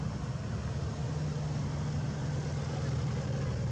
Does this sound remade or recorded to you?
recorded